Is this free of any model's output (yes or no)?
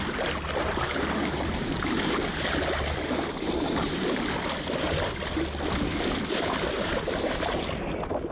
yes